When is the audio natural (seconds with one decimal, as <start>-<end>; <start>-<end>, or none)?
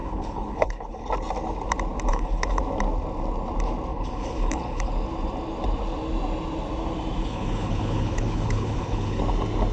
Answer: 1.1-2.1; 2.6-3.9; 4.9-7.2; 9.2-9.7